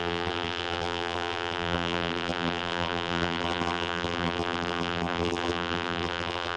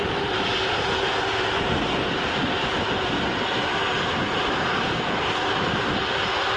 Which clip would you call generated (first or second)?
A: first